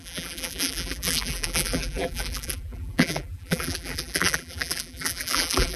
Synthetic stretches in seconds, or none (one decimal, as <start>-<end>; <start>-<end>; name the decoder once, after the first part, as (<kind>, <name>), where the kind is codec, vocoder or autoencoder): 0.0-5.8 (vocoder, BigVGAN v2)